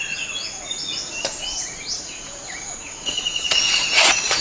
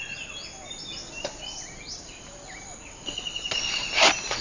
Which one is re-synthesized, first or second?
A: first